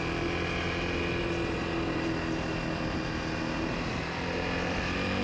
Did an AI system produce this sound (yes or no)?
no